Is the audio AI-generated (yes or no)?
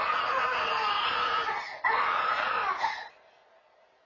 no